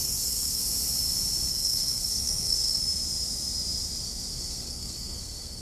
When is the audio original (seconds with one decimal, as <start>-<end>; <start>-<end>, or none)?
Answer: 0.6-1.5; 2.8-4.4